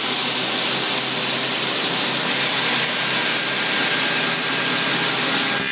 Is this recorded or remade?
recorded